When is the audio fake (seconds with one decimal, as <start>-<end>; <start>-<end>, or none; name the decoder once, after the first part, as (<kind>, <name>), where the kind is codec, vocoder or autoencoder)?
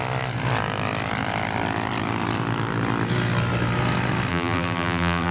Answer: 4.3-5.3 (vocoder, BigVGAN v2)